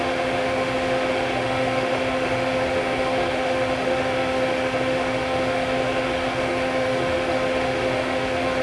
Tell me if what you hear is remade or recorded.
remade